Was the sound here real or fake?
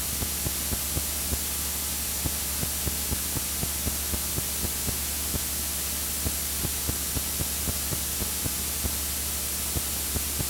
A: real